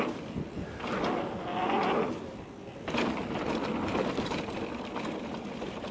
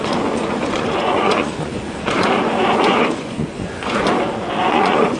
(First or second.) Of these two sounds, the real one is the first